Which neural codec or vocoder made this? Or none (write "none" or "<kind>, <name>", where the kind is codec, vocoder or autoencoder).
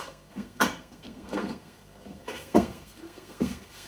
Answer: codec, SNAC